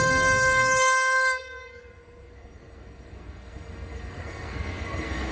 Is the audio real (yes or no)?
no